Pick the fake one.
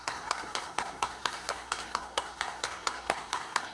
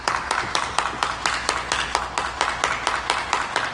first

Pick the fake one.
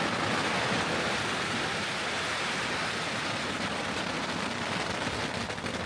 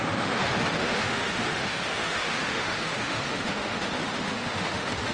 second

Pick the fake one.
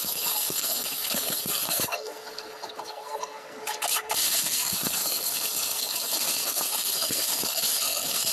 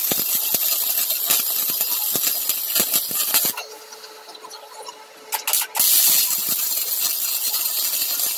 first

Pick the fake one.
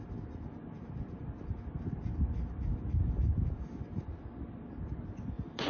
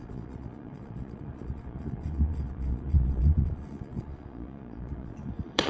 second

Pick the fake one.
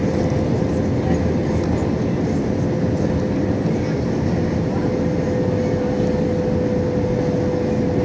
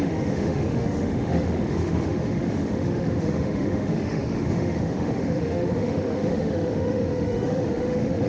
second